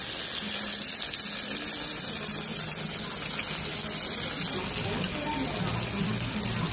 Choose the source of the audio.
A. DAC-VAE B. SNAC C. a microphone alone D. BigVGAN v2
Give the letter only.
C